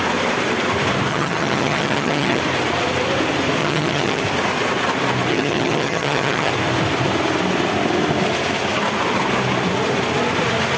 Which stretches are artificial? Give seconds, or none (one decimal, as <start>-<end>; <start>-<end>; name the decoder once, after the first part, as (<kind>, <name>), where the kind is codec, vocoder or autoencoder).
1.1-2.4 (vocoder, HiFi-GAN); 3.6-4.2; 5.3-6.5